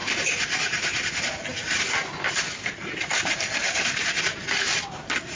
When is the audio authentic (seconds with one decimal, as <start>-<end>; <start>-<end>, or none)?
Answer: 0.0-5.4